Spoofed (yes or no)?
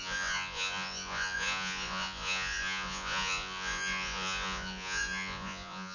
yes